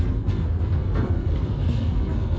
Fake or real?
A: fake